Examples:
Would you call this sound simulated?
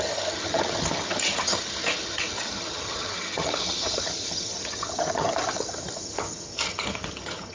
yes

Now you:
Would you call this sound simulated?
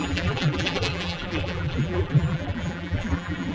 yes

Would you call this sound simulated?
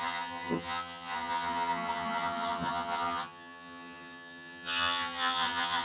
yes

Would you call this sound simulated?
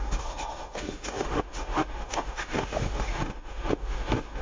yes